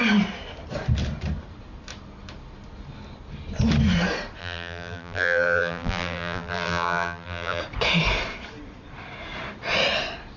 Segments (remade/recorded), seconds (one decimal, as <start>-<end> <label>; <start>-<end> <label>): 0.0-4.4 recorded; 4.4-7.6 remade; 7.6-10.4 recorded